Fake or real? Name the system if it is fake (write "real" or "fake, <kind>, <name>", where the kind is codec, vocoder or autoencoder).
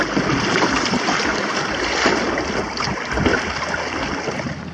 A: real